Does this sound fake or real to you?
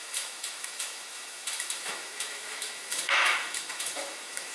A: fake